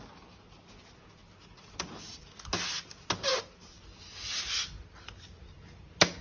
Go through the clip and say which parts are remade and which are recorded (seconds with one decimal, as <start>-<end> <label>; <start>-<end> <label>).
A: 0.0-1.2 recorded; 1.2-2.2 remade; 2.2-6.2 recorded